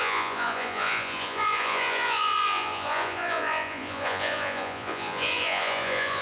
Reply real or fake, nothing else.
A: fake